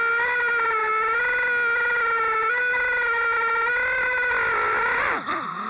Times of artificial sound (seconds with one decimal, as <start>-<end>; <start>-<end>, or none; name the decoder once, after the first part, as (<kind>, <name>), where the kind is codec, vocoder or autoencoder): 5.0-5.7 (vocoder, BigVGAN v2)